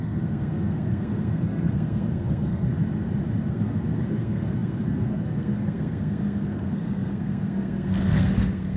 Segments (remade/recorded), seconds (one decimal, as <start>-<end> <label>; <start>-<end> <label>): 0.0-2.7 remade; 2.7-3.5 recorded; 3.5-8.8 remade